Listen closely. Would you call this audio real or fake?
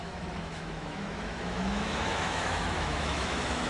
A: fake